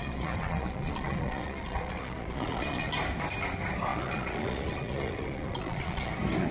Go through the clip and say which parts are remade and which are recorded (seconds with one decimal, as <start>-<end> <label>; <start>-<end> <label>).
0.0-2.9 remade; 2.9-3.9 recorded; 3.9-6.1 remade; 6.1-6.5 recorded